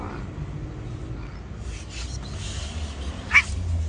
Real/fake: real